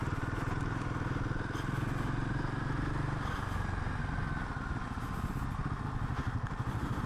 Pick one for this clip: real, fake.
real